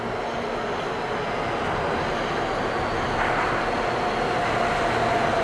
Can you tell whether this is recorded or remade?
recorded